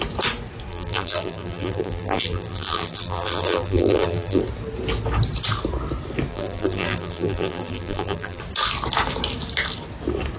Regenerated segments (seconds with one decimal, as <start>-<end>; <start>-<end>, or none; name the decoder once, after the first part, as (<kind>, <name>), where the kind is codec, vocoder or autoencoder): 0.7-4.4 (vocoder, BigVGAN v2); 6.3-8.4